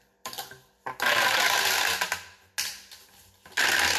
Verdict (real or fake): real